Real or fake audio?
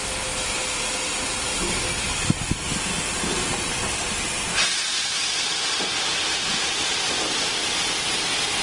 real